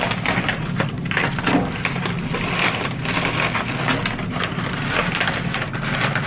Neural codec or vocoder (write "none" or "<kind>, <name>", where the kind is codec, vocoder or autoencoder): none